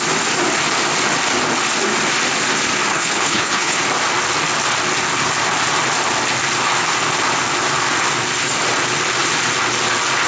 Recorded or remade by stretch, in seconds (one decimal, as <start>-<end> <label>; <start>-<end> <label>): 0.0-2.9 recorded; 2.9-3.8 remade; 3.8-10.3 recorded